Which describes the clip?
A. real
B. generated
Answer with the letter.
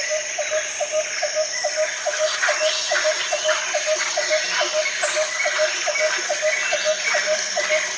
A